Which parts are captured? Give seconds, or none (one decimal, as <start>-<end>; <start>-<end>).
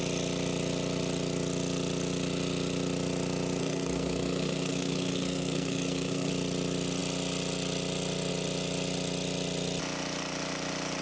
0.0-3.6; 6.3-11.0